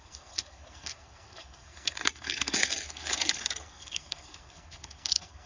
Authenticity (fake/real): fake